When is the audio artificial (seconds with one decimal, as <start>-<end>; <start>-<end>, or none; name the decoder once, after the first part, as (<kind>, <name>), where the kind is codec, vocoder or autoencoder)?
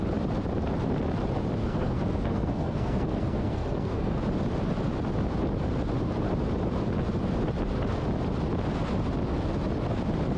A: 1.6-4.2 (codec, SNAC)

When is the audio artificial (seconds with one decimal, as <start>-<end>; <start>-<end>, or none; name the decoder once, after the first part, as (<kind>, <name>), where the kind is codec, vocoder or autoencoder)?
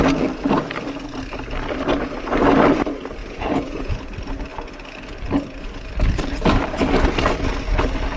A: 3.2-3.9 (vocoder, Vocos)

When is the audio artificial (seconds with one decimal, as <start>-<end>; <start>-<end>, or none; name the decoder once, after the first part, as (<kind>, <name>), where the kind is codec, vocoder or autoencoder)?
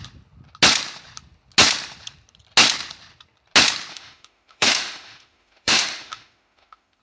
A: 3.9-7.0 (autoencoder, DAC-VAE)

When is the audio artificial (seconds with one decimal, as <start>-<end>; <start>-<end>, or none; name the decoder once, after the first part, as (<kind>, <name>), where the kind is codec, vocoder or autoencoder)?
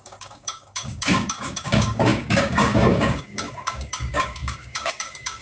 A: 0.0-5.4 (codec, DAC)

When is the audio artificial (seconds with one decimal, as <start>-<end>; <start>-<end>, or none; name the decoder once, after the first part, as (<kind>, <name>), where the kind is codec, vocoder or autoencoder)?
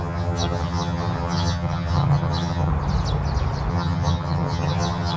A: 0.0-2.7 (vocoder, HiFi-GAN); 3.7-5.2